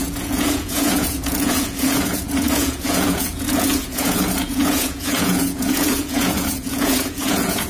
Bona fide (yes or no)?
no